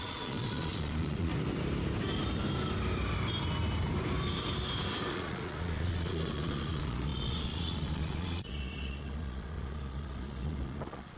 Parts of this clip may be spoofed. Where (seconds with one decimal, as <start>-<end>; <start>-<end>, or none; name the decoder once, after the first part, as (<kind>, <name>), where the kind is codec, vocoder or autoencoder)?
0.0-1.3 (vocoder, Vocos); 5.1-11.2